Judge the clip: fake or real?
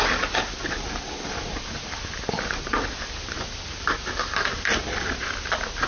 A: real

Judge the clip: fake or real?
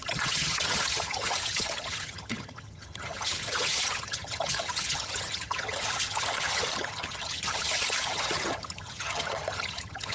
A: fake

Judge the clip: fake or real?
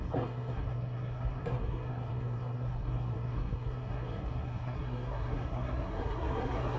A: fake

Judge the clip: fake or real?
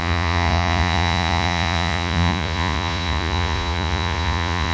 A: fake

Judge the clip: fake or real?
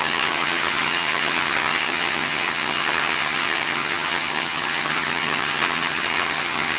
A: fake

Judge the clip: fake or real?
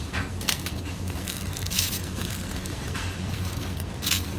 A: fake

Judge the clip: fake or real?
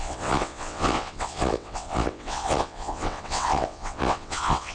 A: fake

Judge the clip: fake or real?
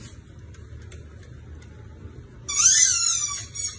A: real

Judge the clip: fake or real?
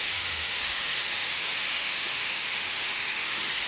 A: fake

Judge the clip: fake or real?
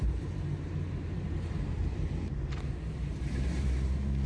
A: fake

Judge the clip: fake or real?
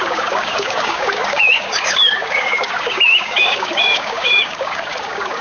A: fake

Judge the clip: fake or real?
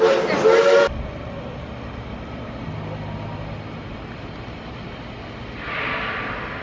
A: real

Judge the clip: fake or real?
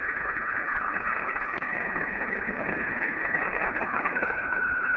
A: fake